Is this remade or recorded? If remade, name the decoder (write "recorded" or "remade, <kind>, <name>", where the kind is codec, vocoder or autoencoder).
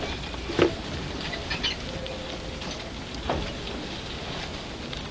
recorded